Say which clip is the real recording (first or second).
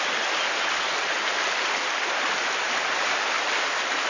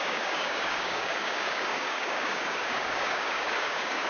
first